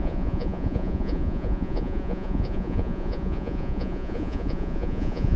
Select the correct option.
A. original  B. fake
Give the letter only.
B